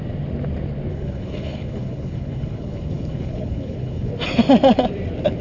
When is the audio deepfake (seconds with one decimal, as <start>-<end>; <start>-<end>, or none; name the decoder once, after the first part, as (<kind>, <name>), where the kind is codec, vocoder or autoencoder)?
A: 0.9-4.1 (codec, HILCodec)